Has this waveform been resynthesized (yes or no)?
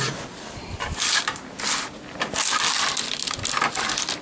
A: no